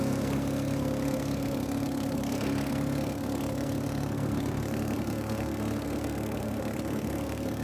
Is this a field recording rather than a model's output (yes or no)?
no